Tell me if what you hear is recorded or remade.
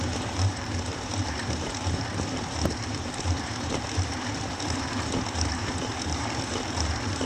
remade